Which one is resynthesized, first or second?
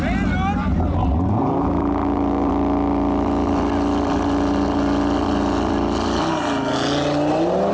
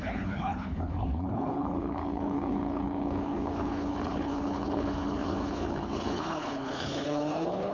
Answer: second